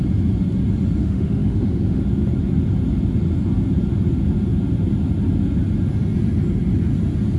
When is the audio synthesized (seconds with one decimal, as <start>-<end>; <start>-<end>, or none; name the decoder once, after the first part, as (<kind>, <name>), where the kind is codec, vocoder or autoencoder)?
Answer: 1.0-2.0 (autoencoder, DAC-VAE)